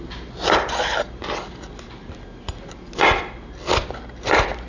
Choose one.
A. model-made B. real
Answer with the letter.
B